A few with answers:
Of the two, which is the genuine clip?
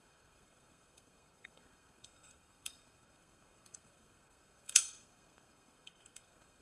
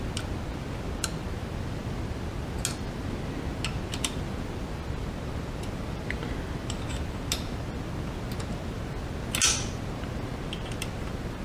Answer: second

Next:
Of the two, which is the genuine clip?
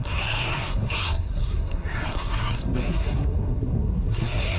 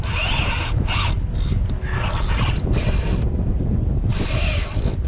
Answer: second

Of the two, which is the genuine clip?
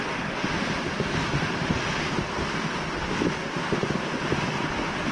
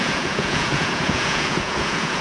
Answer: first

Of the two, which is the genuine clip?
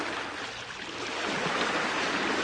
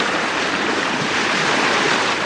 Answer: first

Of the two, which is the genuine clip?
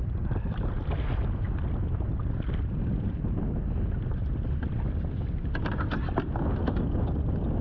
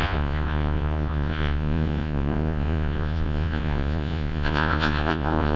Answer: first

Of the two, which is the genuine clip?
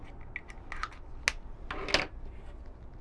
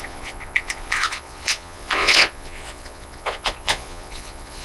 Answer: first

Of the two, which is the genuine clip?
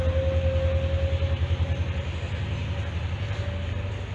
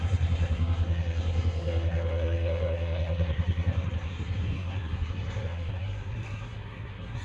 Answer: first